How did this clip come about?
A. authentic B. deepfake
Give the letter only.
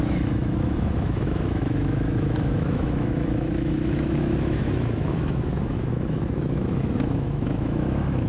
B